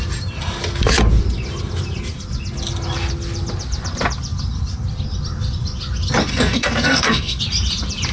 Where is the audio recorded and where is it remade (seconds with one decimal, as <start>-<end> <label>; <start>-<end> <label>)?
0.0-6.3 recorded; 6.3-7.4 remade; 7.4-8.1 recorded